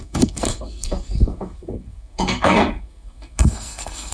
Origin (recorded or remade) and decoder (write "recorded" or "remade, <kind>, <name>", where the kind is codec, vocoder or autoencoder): remade, codec, SNAC